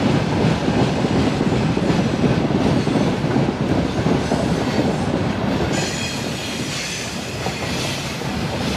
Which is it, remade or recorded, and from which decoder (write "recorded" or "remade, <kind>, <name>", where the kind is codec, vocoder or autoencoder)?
recorded